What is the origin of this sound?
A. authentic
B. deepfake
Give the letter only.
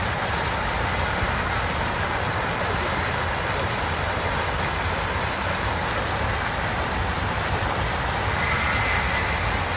A